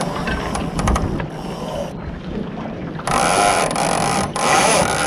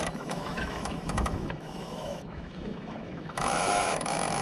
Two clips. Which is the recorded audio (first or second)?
first